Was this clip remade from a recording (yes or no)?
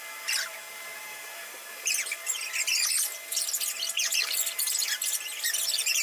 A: yes